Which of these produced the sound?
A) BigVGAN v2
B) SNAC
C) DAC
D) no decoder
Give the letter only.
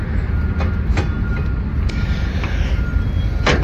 D